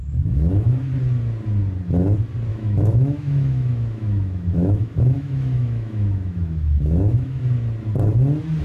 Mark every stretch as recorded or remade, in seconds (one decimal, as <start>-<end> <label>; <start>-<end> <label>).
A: 0.0-0.9 remade; 0.9-2.5 recorded; 2.5-7.4 remade; 7.4-8.6 recorded